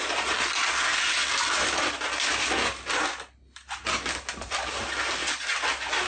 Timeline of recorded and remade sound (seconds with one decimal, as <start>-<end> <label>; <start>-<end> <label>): 0.0-6.1 recorded